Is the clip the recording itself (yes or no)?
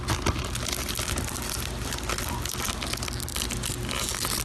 yes